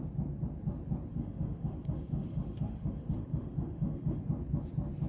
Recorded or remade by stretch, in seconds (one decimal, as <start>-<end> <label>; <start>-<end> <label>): 0.0-1.1 recorded; 1.1-4.2 remade; 4.2-5.1 recorded